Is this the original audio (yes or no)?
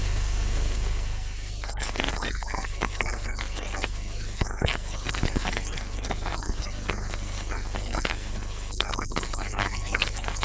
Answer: no